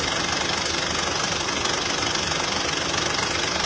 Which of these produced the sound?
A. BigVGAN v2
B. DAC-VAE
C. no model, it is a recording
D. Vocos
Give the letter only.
C